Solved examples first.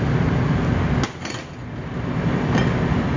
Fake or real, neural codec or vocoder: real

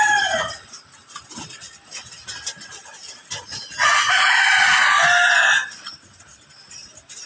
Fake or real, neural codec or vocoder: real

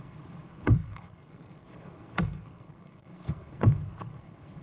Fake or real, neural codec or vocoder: fake, codec, SNAC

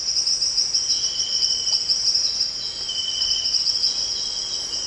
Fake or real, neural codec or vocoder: real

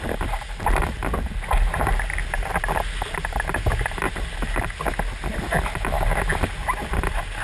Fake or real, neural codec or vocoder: real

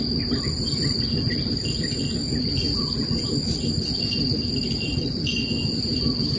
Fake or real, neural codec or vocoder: real